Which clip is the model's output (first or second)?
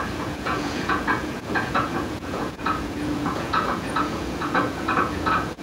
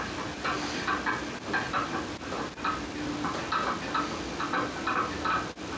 first